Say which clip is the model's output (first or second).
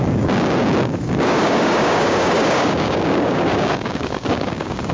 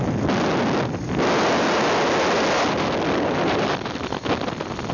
first